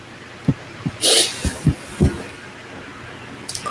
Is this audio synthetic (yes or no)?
no